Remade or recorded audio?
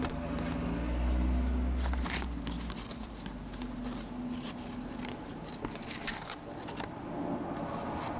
recorded